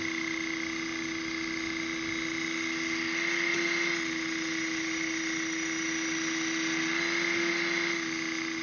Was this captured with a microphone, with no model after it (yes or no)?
yes